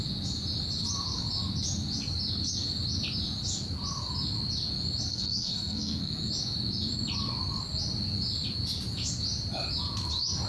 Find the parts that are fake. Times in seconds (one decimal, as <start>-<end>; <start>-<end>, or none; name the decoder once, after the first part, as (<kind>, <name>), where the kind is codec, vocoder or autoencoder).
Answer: 5.1-6.3 (codec, SNAC)